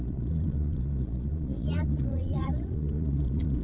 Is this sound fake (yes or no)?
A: yes